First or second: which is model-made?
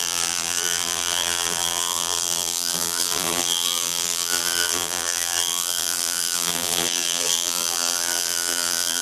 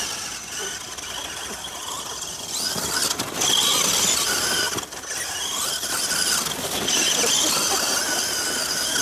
first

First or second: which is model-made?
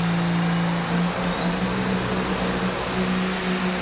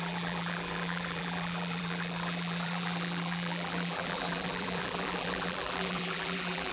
second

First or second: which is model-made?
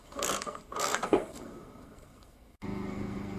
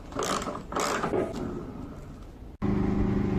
first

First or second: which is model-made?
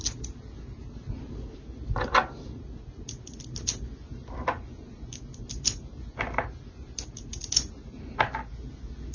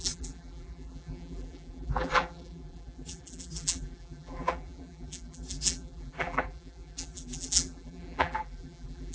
second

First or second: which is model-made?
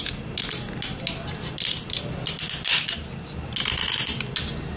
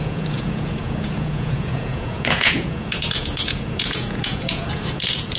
second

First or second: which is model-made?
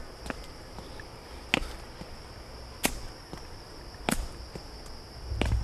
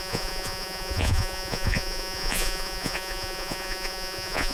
second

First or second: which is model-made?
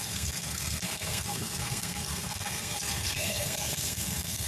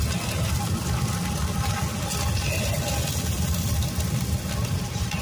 first